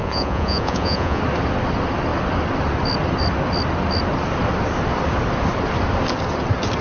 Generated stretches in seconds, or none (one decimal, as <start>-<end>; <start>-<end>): 0.0-1.2